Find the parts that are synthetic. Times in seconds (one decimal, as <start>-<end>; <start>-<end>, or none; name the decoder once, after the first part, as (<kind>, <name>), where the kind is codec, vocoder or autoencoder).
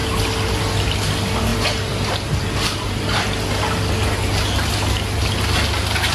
none